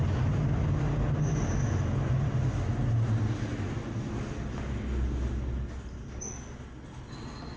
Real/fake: real